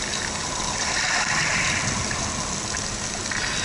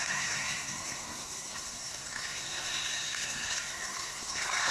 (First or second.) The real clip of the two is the first